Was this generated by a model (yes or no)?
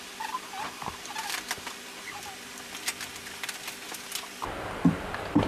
yes